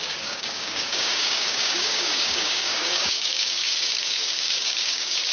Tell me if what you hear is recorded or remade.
remade